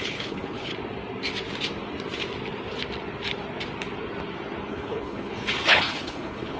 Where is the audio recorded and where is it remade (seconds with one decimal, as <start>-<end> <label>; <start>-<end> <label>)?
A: 0.0-0.7 remade; 0.7-4.7 recorded; 4.7-6.6 remade